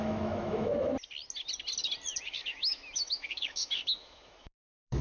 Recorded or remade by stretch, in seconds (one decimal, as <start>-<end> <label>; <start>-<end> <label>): 0.0-0.9 remade; 0.9-2.2 recorded; 2.2-5.0 remade